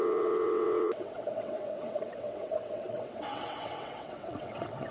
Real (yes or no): no